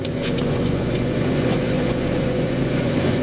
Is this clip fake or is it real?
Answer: fake